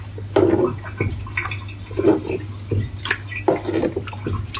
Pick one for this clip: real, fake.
real